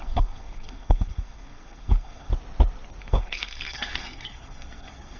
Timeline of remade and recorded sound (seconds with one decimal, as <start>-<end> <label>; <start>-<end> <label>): 0.0-2.3 remade; 2.3-3.0 recorded; 3.0-5.2 remade